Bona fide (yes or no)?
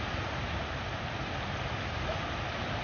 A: no